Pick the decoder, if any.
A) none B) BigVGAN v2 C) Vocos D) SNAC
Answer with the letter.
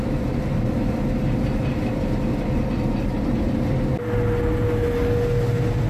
A